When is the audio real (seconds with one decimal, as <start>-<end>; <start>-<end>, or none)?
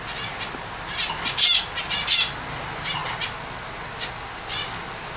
0.0-5.2